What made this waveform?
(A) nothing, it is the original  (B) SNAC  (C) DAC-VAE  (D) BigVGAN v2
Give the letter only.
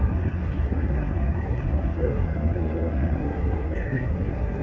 B